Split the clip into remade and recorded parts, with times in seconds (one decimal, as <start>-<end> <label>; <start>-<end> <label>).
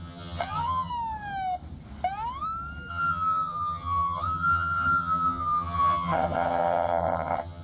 0.0-0.9 remade; 0.9-2.9 recorded; 2.9-7.6 remade